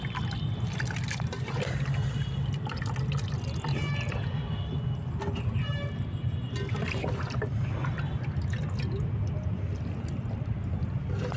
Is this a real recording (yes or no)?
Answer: yes